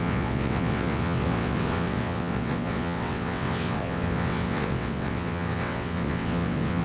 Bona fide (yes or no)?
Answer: no